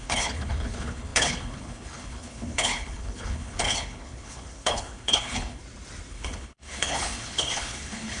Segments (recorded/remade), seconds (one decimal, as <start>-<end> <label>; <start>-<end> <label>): 0.0-5.6 remade; 5.6-6.1 recorded; 6.1-8.2 remade